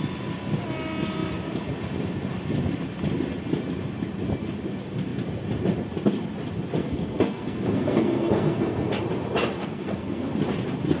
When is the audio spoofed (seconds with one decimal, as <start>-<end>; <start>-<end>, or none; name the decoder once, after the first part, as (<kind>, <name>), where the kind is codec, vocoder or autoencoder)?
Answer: 6.8-8.9 (codec, SNAC); 9.6-10.3